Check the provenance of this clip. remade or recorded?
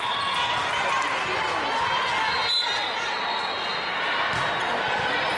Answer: recorded